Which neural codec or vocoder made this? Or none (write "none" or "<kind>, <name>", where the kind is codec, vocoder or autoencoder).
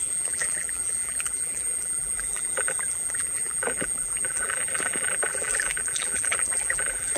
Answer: vocoder, BigVGAN v2